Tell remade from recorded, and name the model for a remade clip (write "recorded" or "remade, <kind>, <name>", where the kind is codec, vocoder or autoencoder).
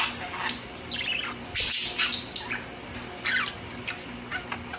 recorded